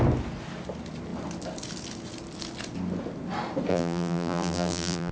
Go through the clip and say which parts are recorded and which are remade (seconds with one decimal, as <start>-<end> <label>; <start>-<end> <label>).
0.0-3.7 recorded; 3.7-5.1 remade